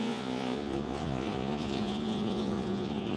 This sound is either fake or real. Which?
fake